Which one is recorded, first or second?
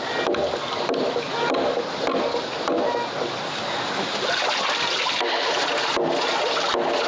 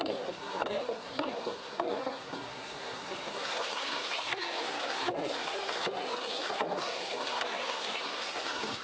first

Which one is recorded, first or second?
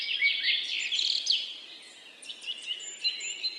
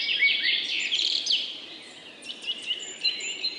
first